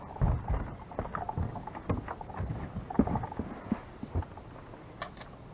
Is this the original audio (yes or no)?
yes